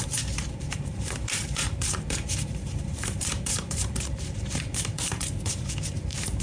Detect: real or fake fake